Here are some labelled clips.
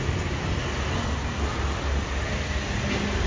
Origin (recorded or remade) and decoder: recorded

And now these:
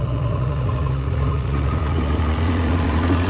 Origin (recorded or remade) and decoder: remade, vocoder, Vocos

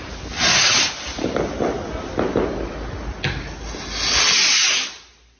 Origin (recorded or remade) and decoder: recorded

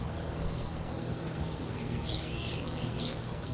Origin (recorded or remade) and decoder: remade, codec, SNAC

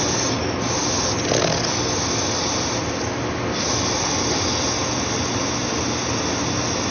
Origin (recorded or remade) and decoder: recorded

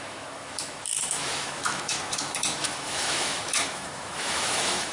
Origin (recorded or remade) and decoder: remade, autoencoder, DAC-VAE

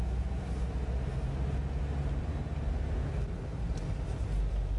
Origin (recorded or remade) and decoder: recorded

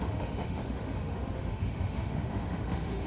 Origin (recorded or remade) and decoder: remade, autoencoder, DAC-VAE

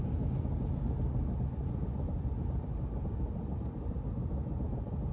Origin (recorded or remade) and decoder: recorded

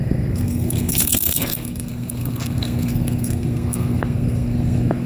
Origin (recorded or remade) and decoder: remade, codec, SNAC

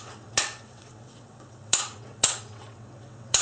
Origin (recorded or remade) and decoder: remade, vocoder, WaveNeXt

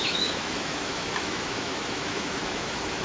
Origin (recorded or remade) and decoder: remade, autoencoder, DAC-VAE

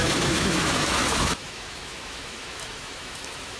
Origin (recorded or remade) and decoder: remade, autoencoder, DAC-VAE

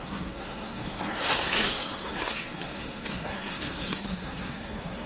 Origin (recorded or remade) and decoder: remade, codec, SNAC